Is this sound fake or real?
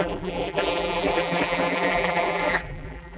fake